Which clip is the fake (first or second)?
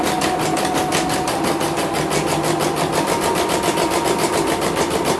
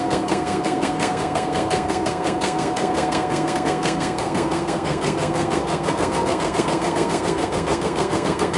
second